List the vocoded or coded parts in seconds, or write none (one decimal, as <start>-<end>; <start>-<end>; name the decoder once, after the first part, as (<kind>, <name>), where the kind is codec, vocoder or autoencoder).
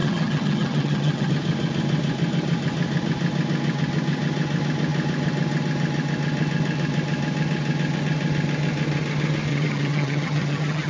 0.0-1.3 (vocoder, HiFi-GAN); 9.5-10.9